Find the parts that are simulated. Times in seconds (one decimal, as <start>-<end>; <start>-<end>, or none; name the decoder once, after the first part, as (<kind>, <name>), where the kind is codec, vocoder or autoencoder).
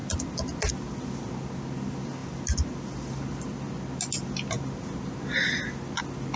none